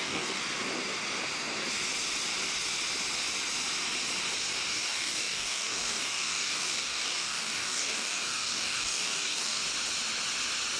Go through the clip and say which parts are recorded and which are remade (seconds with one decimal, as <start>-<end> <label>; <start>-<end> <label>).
0.0-0.4 remade; 0.4-4.7 recorded; 4.7-9.6 remade; 9.6-10.8 recorded